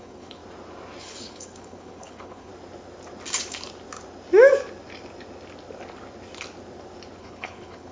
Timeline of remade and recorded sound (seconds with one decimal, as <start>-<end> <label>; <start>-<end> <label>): 0.0-0.4 remade; 0.4-1.0 recorded; 1.0-2.5 remade; 2.5-7.2 recorded; 7.2-7.9 remade